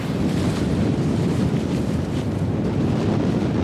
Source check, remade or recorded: recorded